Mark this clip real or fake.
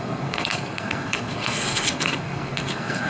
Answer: fake